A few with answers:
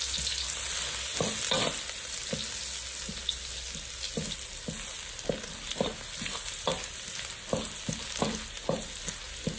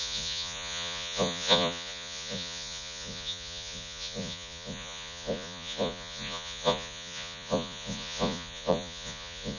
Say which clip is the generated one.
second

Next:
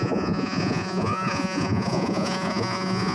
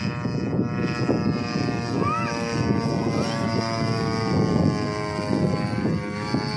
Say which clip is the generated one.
first